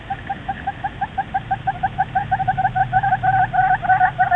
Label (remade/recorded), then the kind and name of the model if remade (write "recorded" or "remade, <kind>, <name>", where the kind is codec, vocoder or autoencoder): recorded